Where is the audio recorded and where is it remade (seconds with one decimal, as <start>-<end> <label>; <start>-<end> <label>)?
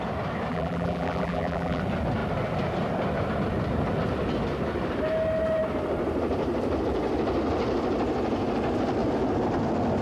0.0-0.5 recorded; 0.5-1.8 remade; 1.8-10.0 recorded